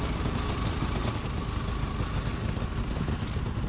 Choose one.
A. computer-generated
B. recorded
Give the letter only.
B